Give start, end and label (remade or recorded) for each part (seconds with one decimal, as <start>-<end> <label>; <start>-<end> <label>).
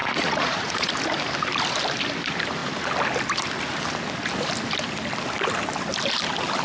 0.0-0.9 remade; 0.9-6.6 recorded